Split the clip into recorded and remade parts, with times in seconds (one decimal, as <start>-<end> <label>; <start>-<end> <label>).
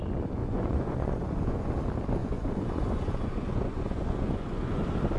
0.0-0.4 recorded; 0.4-1.7 remade; 1.7-2.2 recorded; 2.2-4.8 remade; 4.8-5.2 recorded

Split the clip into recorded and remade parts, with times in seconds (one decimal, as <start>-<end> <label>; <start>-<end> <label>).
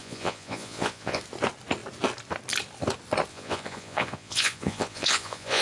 0.0-1.2 remade; 1.2-3.3 recorded; 3.3-5.6 remade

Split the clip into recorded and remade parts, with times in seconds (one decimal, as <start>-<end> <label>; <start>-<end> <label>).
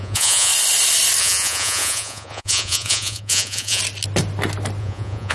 0.0-0.5 remade; 0.5-1.2 recorded; 1.2-3.8 remade; 3.8-4.8 recorded; 4.8-5.3 remade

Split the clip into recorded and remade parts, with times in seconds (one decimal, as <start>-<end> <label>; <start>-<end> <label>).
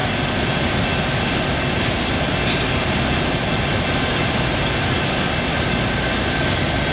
0.0-6.9 recorded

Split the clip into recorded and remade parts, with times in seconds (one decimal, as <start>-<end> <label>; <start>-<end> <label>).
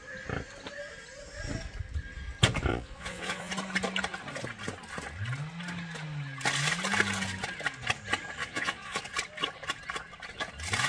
0.0-2.7 recorded; 2.7-3.5 remade; 3.5-8.4 recorded; 8.4-9.0 remade; 9.0-10.9 recorded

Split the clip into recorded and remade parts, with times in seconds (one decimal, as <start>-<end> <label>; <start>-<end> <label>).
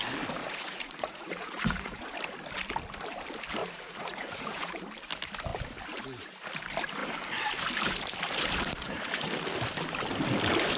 0.0-0.4 recorded; 0.4-2.1 remade; 2.1-3.6 recorded; 3.6-4.8 remade; 4.8-10.8 recorded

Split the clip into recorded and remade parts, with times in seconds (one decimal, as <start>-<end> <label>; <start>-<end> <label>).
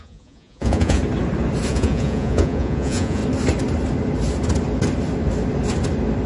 0.0-1.0 remade; 1.0-1.7 recorded; 1.7-3.2 remade; 3.2-6.3 recorded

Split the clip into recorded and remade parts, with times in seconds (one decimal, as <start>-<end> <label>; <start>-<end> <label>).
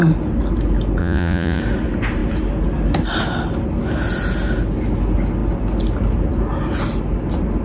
0.0-1.0 recorded; 1.0-1.6 remade; 1.6-7.6 recorded